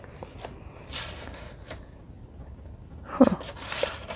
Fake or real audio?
real